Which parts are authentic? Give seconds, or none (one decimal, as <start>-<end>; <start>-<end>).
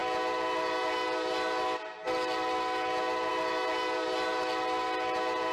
0.0-5.5